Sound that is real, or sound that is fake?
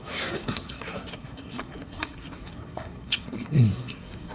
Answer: fake